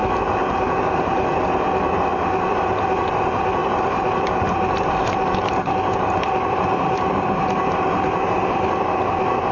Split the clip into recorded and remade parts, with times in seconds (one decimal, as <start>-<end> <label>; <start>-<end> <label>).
0.0-3.6 recorded; 3.6-7.7 remade; 7.7-9.5 recorded